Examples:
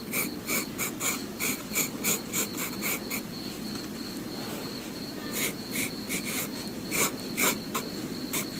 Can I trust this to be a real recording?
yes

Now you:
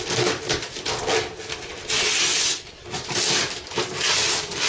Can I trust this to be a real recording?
yes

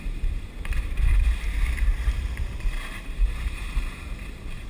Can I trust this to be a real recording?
no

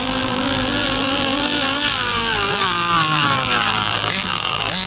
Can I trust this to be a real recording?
no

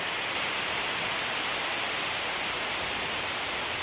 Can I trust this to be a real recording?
yes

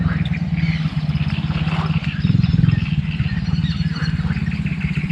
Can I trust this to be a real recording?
yes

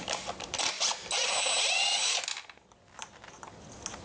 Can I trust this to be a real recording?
yes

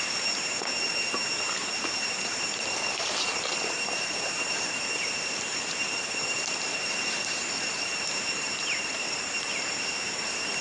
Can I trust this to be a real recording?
no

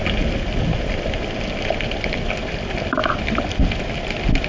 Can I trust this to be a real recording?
yes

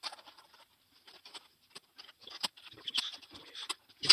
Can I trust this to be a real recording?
no